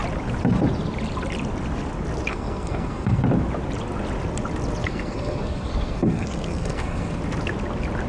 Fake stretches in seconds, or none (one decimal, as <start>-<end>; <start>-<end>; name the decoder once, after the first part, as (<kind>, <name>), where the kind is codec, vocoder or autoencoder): 2.3-3.2 (codec, SNAC); 4.8-7.2